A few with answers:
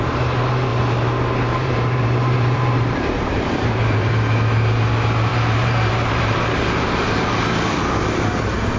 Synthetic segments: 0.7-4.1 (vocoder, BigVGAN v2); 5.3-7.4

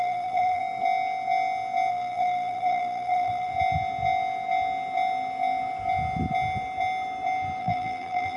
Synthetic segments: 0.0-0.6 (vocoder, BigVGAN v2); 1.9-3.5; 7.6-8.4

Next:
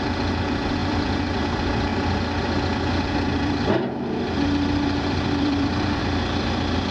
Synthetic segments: 0.8-1.4 (vocoder, BigVGAN v2); 1.9-6.0

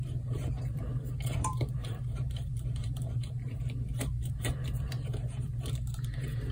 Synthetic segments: 0.0-6.5 (vocoder, BigVGAN v2)

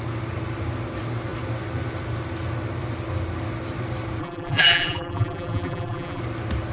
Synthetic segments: 4.2-6.2 (vocoder, BigVGAN v2)

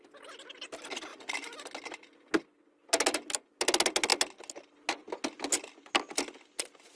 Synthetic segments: none

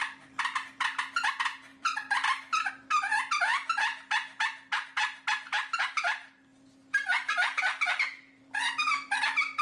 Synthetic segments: 1.7-2.7 (vocoder, BigVGAN v2)

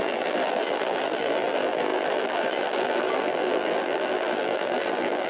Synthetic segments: 0.0-5.3 (vocoder, BigVGAN v2)